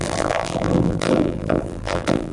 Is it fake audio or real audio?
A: fake